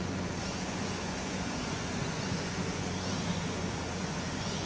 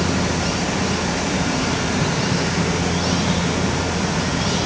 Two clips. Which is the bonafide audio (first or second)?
second